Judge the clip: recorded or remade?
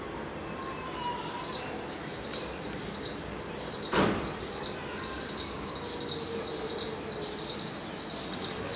recorded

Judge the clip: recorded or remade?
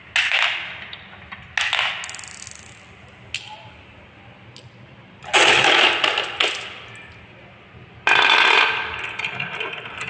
recorded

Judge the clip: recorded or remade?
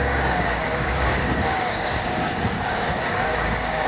remade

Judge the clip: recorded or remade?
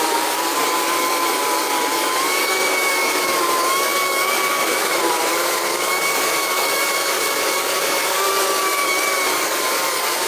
remade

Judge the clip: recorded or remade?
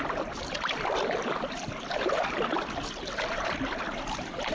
recorded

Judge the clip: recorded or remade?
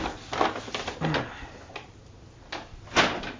recorded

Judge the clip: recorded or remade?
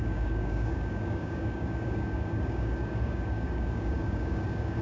remade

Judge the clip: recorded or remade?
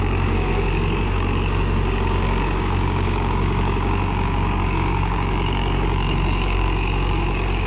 remade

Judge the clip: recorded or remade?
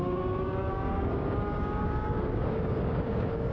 remade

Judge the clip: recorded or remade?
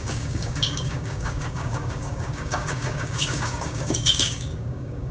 remade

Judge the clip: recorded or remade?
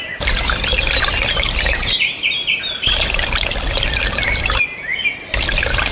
recorded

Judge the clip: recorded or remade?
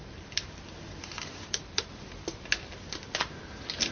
recorded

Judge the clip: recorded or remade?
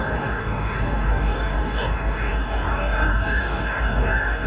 remade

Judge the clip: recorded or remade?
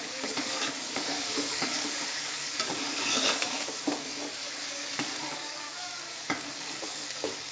remade